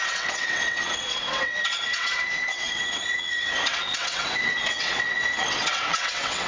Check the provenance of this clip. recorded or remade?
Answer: remade